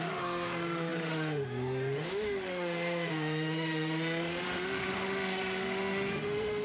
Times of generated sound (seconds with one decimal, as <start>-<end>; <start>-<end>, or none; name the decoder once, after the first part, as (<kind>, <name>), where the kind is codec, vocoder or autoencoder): 0.0-6.6 (autoencoder, DAC-VAE)